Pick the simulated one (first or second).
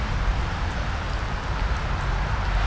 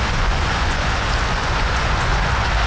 second